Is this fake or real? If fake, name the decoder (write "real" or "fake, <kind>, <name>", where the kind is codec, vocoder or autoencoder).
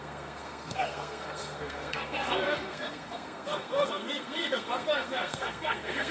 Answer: fake, codec, SNAC